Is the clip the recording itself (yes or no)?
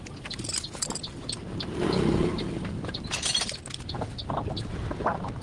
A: yes